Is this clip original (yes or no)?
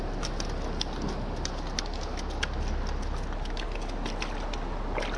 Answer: yes